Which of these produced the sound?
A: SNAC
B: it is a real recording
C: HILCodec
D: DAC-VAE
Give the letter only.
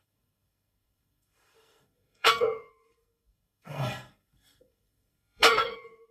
A